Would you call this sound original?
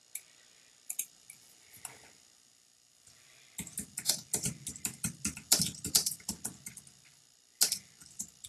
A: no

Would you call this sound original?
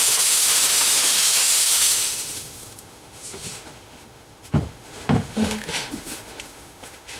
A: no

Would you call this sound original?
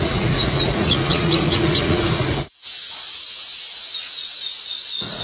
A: no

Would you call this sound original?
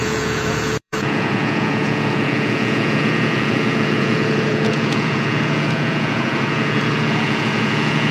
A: no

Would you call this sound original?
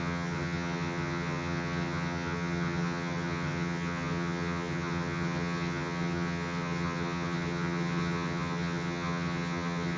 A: no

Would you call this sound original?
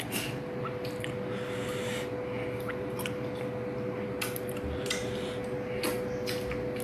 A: yes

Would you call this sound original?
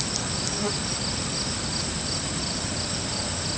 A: yes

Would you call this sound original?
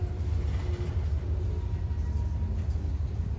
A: yes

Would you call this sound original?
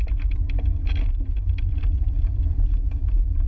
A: no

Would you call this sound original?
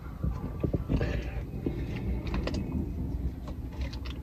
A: yes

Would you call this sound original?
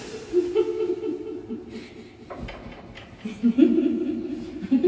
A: yes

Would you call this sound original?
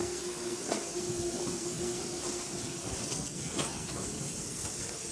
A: no